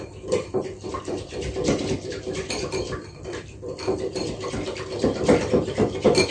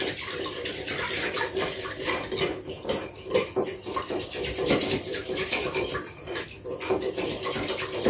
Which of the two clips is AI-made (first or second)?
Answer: first